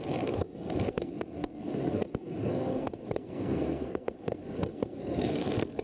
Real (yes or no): no